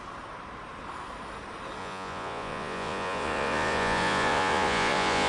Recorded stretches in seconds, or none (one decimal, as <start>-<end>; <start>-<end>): 0.0-1.8

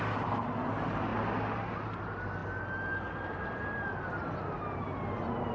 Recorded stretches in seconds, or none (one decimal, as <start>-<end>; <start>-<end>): 0.0-5.5

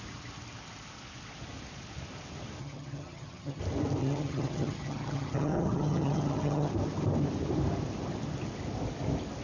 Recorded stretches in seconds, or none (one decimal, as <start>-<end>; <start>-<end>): 0.0-2.6; 3.6-4.0; 6.7-9.4

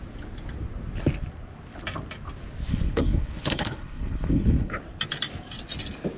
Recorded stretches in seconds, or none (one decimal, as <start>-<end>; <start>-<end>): 0.0-2.7; 4.7-6.2

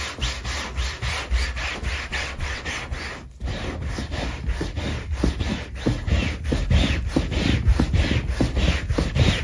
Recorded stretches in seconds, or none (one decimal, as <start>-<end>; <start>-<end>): 0.0-2.1; 2.7-9.4